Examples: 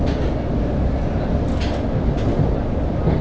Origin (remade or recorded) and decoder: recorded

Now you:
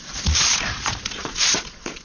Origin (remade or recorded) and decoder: remade, vocoder, Vocos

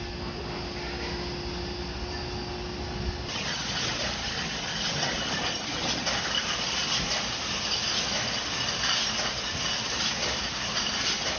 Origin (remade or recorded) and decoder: recorded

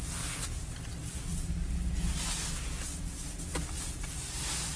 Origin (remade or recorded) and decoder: recorded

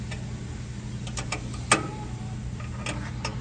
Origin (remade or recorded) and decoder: recorded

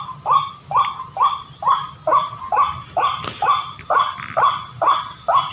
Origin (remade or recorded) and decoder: recorded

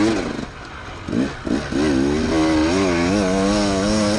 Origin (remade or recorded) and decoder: recorded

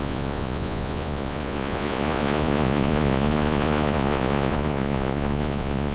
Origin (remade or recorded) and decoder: remade, vocoder, Vocos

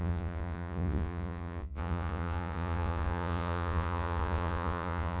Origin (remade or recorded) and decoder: remade, vocoder, Vocos